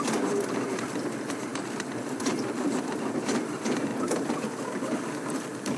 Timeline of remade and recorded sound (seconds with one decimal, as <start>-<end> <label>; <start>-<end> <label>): 0.0-3.9 remade; 3.9-5.1 recorded; 5.1-5.8 remade